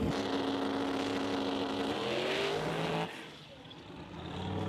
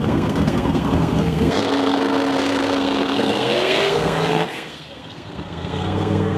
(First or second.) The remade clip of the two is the second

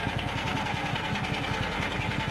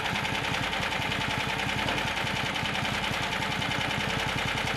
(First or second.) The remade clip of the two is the first